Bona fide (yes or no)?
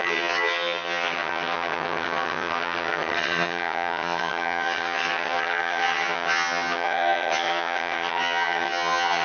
no